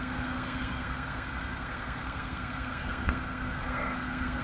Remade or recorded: remade